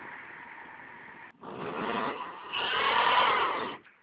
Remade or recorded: recorded